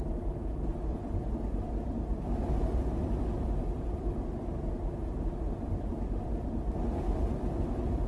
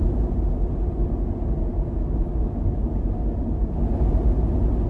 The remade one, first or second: first